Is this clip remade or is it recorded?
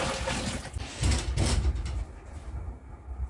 recorded